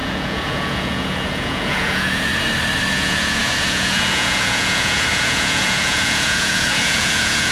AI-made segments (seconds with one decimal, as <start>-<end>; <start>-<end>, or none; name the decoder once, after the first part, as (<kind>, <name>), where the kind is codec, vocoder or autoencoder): 0.0-2.3 (vocoder, Vocos); 2.9-7.5